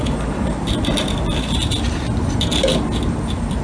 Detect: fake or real real